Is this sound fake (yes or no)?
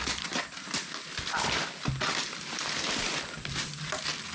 no